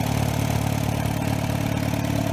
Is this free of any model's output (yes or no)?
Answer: yes